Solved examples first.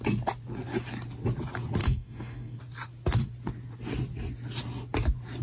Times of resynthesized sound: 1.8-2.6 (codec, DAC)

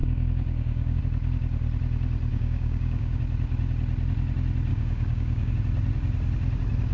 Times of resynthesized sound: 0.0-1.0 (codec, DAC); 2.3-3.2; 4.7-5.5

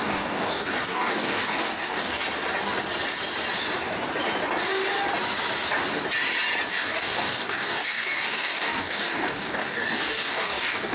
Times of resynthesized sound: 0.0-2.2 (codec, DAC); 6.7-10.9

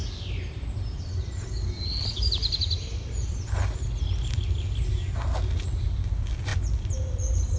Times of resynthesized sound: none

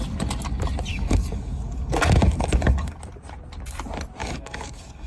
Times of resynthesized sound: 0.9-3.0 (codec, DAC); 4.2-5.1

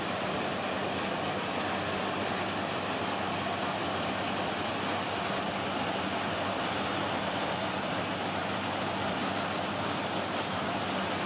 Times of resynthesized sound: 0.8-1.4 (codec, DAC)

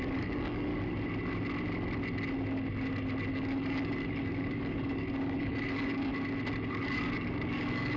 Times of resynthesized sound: 0.0-0.7 (codec, DAC); 3.3-6.1; 6.7-8.0